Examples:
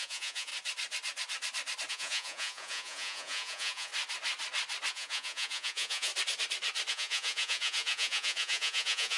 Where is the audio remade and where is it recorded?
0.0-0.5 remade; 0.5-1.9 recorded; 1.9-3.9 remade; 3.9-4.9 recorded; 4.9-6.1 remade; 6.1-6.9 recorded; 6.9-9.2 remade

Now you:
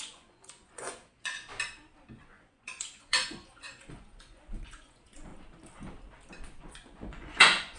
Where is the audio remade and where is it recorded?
0.0-1.5 remade; 1.5-2.1 recorded; 2.1-5.3 remade; 5.3-6.6 recorded; 6.6-7.8 remade